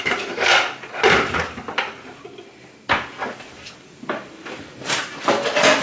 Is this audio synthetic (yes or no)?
no